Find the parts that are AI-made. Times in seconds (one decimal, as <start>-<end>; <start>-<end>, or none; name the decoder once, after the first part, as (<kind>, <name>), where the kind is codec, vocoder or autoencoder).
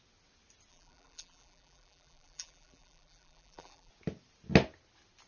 0.7-3.9 (vocoder, BigVGAN v2)